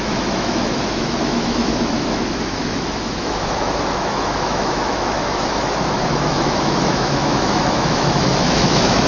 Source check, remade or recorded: remade